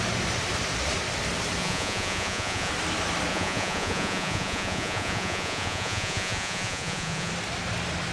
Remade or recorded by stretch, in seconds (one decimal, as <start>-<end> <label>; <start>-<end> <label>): 0.0-1.6 recorded; 1.6-2.7 remade; 2.7-3.3 recorded; 3.3-7.3 remade; 7.3-8.1 recorded

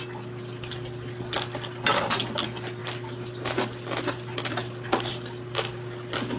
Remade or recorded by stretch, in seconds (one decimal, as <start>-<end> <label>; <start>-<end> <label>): 0.0-6.4 recorded

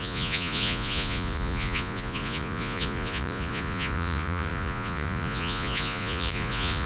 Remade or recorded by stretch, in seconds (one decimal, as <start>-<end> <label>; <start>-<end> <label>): 0.0-6.9 remade

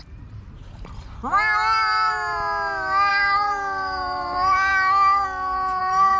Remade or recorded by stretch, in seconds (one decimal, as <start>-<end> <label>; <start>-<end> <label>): 0.0-1.2 remade; 1.2-3.1 recorded; 3.1-4.7 remade; 4.7-5.8 recorded; 5.8-6.2 remade